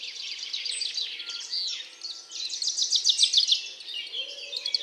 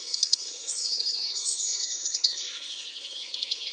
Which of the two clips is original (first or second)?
first